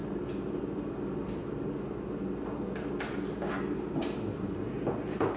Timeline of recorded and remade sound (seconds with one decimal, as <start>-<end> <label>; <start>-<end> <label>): 0.0-5.4 recorded